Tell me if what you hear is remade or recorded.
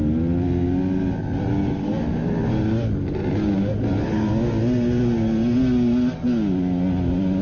recorded